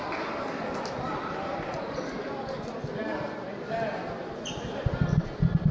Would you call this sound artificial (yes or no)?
no